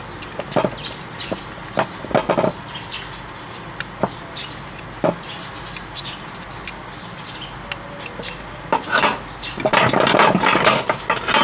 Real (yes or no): yes